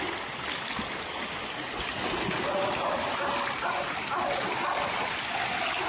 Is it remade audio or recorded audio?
recorded